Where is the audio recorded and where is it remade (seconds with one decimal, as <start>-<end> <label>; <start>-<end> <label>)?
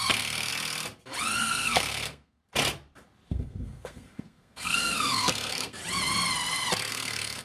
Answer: 0.0-0.5 remade; 0.5-1.4 recorded; 1.4-2.4 remade; 2.4-3.3 recorded; 3.3-5.8 remade; 5.8-6.9 recorded; 6.9-7.4 remade